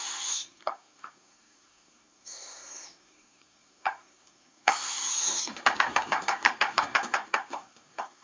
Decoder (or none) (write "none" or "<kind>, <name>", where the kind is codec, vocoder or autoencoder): codec, SNAC